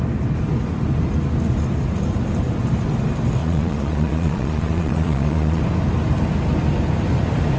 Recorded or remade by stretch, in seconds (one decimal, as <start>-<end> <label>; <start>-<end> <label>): 0.0-3.4 recorded; 3.4-5.6 remade; 5.6-7.6 recorded